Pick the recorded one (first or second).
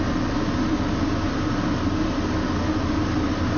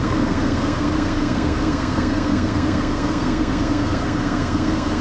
first